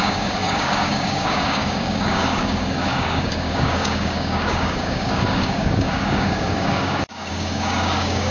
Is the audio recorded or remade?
remade